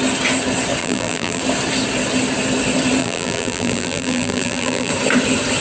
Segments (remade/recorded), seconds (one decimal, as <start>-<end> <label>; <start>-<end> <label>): 0.0-0.8 recorded; 0.8-1.4 remade; 1.4-3.0 recorded; 3.0-4.9 remade; 4.9-5.6 recorded